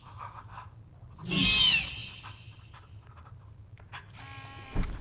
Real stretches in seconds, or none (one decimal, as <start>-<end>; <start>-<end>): 0.0-5.0